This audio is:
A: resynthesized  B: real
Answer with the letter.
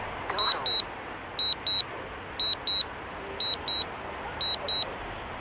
B